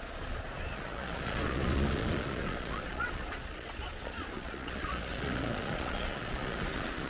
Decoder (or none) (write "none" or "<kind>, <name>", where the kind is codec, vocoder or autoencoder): vocoder, Vocos